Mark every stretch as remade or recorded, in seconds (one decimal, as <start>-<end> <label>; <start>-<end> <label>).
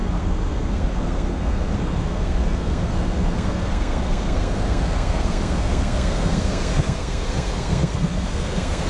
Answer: 0.0-8.9 remade